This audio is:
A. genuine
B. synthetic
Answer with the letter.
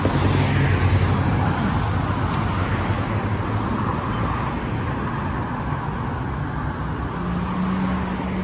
A